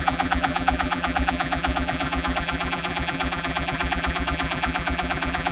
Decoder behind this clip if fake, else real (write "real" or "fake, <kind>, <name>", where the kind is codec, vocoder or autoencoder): fake, vocoder, BigVGAN v2